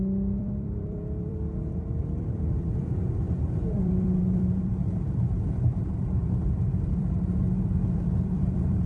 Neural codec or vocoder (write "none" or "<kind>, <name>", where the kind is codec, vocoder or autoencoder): vocoder, BigVGAN v2